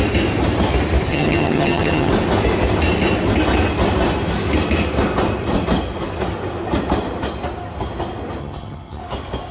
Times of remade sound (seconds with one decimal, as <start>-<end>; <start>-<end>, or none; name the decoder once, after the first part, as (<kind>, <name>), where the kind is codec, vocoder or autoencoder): 1.1-2.1 (vocoder, HiFi-GAN); 8.4-9.0